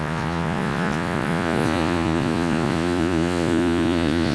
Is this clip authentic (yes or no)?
no